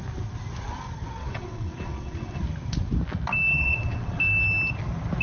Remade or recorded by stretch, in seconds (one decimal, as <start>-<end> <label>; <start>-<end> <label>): 0.0-1.2 recorded; 1.2-2.4 remade; 2.4-3.5 recorded; 3.5-4.2 remade; 4.2-5.2 recorded